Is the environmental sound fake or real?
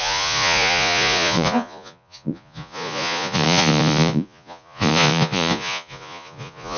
fake